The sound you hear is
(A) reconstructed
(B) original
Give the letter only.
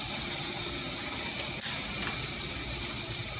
B